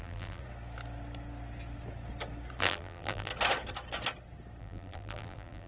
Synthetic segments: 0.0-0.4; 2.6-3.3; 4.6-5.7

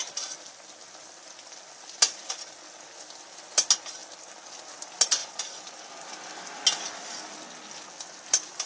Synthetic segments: 5.2-5.9